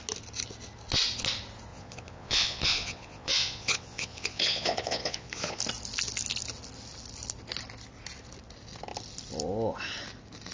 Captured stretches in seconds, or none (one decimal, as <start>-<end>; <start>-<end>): 0.0-1.7; 5.6-10.5

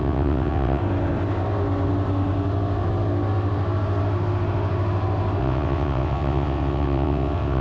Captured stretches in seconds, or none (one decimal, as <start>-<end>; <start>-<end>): 0.8-5.4

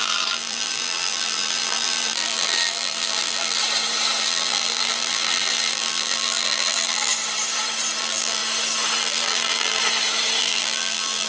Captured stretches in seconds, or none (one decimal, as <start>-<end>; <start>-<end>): 3.6-4.2; 7.1-8.0; 8.4-9.0; 9.8-10.4